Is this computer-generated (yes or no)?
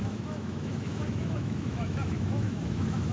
yes